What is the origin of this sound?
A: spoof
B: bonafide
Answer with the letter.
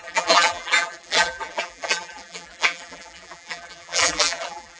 A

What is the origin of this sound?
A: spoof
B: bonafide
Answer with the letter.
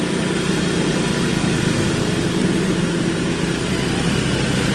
B